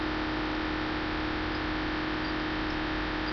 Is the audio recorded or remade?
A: recorded